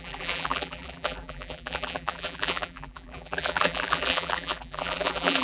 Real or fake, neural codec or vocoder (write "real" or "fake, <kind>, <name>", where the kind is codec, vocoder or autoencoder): fake, vocoder, BigVGAN v2